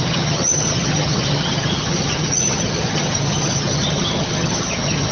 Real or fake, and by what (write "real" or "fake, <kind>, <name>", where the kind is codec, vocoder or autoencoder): fake, vocoder, HiFi-GAN